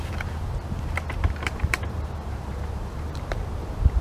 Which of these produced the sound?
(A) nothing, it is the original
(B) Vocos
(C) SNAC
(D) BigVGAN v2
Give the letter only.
D